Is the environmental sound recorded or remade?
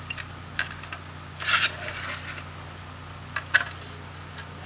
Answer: recorded